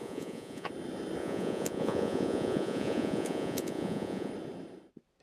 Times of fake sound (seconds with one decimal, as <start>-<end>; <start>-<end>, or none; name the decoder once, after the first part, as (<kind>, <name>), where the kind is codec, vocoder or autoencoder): 0.0-0.7 (vocoder, Vocos); 1.2-4.3